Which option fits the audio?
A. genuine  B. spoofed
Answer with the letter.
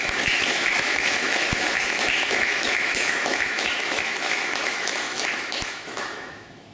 B